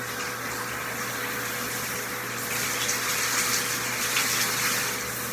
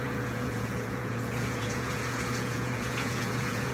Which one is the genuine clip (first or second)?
first